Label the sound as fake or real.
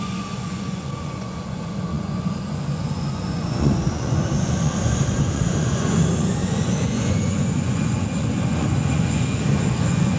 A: fake